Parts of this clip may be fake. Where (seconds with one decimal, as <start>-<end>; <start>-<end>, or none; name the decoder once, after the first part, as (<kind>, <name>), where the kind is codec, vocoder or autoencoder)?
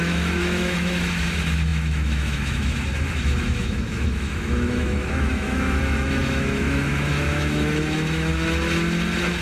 0.0-8.3 (autoencoder, DAC-VAE)